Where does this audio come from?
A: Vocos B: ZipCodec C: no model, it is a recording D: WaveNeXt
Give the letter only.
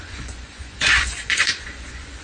A